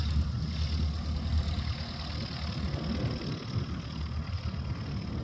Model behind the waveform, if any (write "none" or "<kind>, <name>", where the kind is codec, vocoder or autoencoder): none